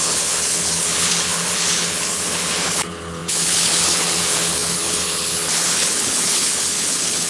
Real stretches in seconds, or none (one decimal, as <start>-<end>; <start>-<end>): none